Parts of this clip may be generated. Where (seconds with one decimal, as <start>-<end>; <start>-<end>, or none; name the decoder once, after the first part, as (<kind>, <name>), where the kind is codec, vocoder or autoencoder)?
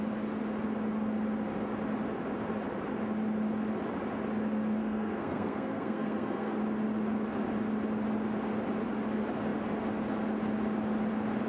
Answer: 4.8-6.6 (codec, SNAC)